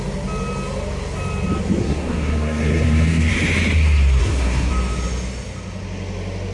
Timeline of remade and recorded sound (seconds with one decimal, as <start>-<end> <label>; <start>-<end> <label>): 0.0-1.8 recorded; 1.8-3.3 remade; 3.3-4.2 recorded; 4.2-4.7 remade; 4.7-6.5 recorded